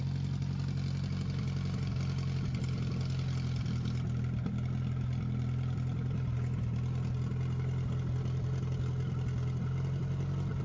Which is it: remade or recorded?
recorded